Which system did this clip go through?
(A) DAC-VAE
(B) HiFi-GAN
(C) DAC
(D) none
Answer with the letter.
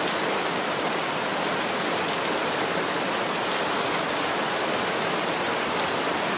D